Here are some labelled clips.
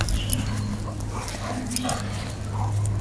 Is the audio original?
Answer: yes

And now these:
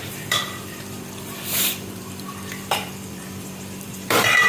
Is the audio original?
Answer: no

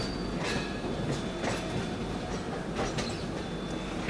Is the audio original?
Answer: yes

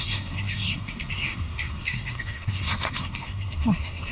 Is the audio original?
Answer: no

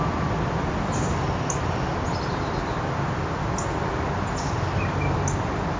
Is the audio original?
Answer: yes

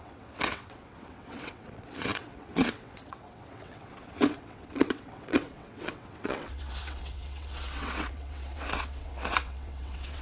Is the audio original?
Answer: no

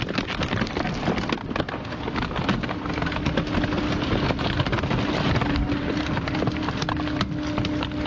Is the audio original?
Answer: yes